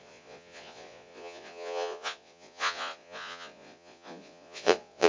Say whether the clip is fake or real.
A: fake